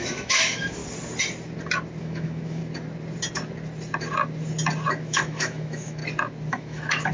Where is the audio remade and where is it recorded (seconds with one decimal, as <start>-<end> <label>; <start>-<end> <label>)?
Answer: 0.0-0.8 remade; 0.8-2.0 recorded; 2.0-2.6 remade; 2.6-4.9 recorded; 4.9-6.0 remade; 6.0-6.5 recorded; 6.5-7.1 remade